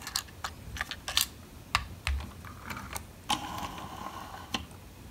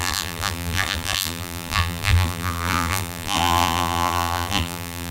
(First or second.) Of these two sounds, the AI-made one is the second